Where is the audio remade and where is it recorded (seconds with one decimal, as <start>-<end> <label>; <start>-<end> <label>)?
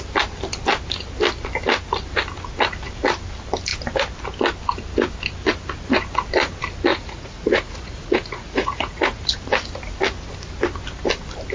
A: 0.0-6.9 recorded; 6.9-9.4 remade; 9.4-11.5 recorded